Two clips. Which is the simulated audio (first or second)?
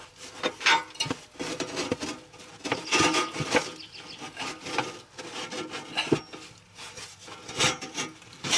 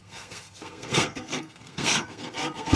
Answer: second